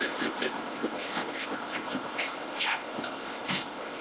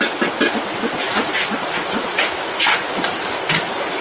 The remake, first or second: first